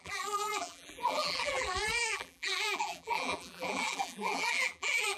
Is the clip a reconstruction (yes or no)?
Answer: yes